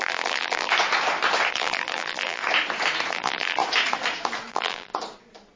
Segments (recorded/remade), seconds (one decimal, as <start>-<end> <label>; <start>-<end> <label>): 0.0-0.7 remade; 0.7-1.5 recorded; 1.5-2.4 remade; 2.4-3.1 recorded; 3.1-3.6 remade; 3.6-4.5 recorded; 4.5-4.9 remade; 4.9-5.6 recorded